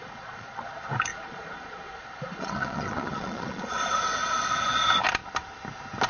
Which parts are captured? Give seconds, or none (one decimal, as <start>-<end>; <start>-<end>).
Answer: 0.6-1.1; 4.8-6.1